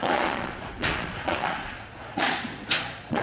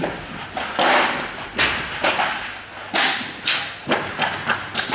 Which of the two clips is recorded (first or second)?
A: second